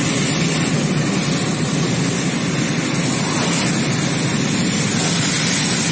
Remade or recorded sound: recorded